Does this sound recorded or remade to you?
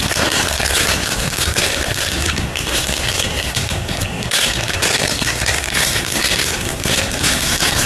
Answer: remade